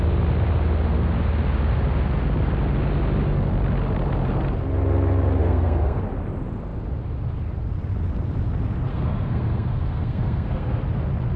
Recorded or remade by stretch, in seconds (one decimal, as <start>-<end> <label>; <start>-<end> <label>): 0.0-5.4 recorded; 5.4-6.0 remade; 6.0-8.9 recorded; 8.9-10.8 remade; 10.8-11.4 recorded